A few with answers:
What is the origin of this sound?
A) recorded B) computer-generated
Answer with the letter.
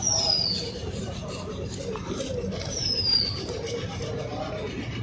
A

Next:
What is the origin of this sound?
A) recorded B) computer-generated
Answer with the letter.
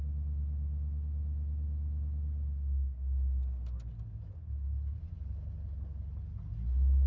A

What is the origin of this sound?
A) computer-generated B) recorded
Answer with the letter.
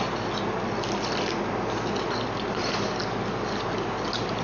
B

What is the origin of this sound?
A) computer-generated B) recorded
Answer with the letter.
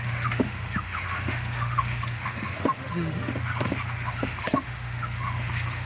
A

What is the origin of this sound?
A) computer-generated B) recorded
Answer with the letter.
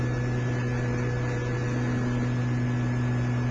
B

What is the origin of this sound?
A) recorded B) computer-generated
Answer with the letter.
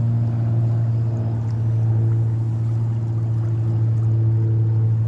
A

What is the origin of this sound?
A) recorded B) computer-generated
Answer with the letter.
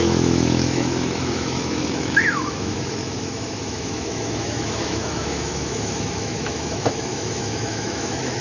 B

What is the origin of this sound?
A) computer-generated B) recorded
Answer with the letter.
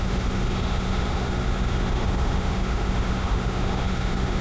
A